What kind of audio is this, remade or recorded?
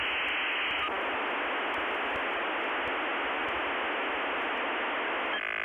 recorded